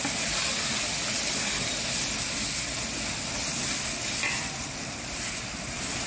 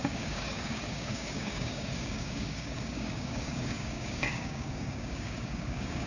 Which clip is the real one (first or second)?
first